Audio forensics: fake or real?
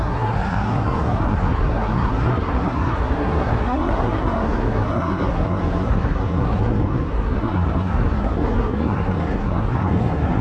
fake